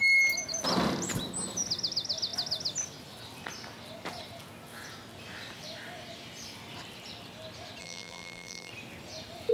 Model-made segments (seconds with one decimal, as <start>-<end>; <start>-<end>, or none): 7.8-8.7